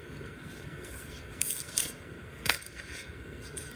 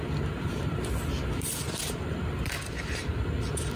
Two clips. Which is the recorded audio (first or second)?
second